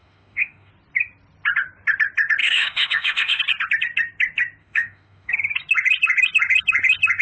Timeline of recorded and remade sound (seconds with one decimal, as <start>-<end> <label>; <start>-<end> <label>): 0.0-0.7 remade; 0.7-2.4 recorded; 2.4-3.4 remade; 3.4-4.6 recorded; 4.6-5.3 remade; 5.3-7.2 recorded